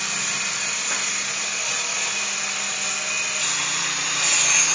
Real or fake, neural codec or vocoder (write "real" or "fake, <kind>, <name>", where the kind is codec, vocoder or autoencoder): real